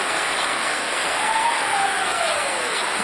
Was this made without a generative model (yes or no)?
no